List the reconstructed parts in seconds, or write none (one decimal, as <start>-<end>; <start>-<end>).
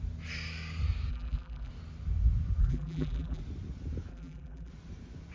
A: 1.1-1.7; 2.6-3.4; 4.1-4.7